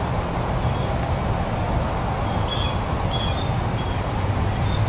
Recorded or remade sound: recorded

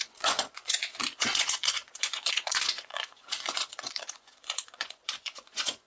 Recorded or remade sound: remade